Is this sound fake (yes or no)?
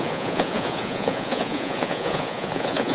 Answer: yes